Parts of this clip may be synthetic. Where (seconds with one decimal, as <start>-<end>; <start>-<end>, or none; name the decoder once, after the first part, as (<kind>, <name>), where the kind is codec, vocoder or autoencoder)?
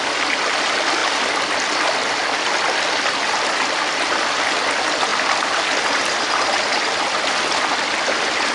none